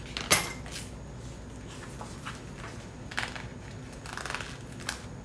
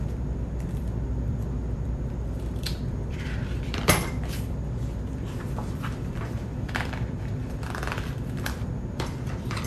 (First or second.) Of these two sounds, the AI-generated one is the second